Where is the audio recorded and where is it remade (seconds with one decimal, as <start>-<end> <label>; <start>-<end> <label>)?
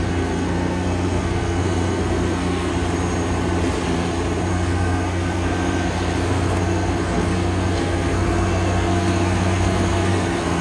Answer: 0.0-2.7 remade; 2.7-4.5 recorded; 4.5-10.6 remade